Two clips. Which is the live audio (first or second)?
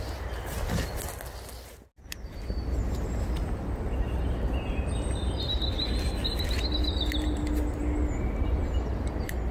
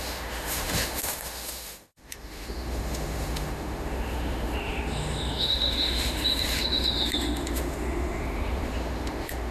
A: first